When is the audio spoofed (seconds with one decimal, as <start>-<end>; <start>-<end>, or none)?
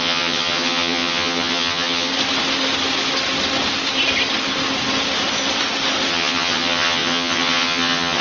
0.0-2.1; 6.1-8.2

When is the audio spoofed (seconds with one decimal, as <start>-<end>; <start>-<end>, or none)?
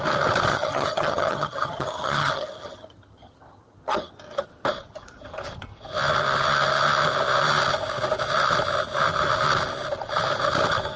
0.5-4.1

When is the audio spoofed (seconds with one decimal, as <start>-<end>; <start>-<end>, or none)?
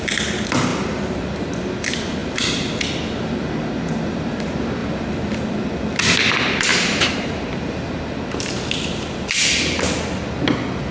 0.7-1.4; 2.2-2.7; 4.8-5.4; 6.7-8.2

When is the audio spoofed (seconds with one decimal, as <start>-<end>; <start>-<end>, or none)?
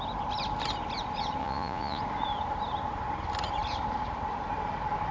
1.4-2.0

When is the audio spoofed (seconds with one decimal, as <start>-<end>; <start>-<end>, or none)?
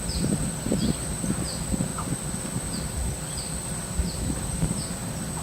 none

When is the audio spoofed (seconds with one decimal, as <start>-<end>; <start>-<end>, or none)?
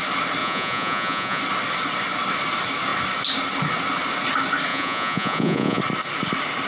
0.4-1.4; 4.7-5.8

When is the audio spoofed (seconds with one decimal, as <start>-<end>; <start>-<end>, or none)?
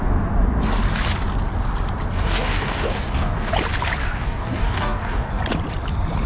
2.1-3.5; 4.0-5.4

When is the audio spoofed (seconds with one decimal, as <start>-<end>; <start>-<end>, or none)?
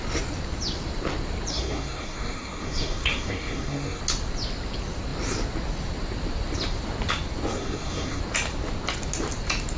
1.5-4.0; 7.5-8.2